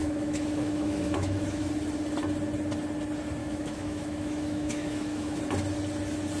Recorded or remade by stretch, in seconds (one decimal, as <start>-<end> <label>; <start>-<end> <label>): 0.0-1.7 remade; 1.7-3.4 recorded; 3.4-5.4 remade; 5.4-6.4 recorded